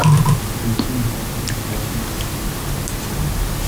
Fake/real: real